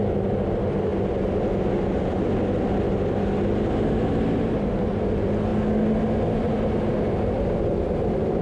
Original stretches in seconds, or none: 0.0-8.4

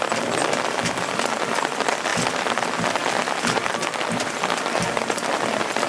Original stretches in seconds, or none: 2.1-2.6; 3.0-3.7

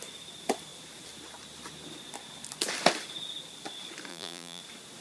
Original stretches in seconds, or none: 0.0-4.1; 4.6-5.0

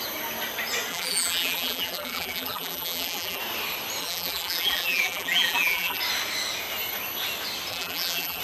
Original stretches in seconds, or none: 0.0-0.9; 3.4-4.0; 6.0-7.7

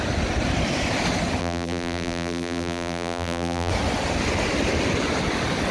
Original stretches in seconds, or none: 0.0-1.4; 3.7-5.7